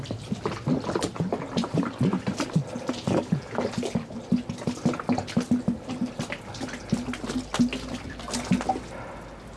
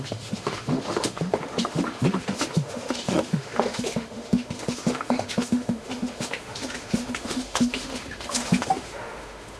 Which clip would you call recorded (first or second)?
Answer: first